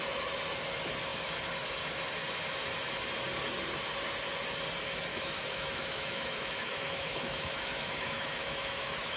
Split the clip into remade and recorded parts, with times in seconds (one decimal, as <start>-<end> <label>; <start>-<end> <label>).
0.0-5.1 recorded; 5.1-9.2 remade